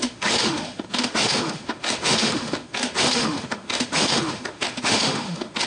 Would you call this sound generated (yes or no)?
yes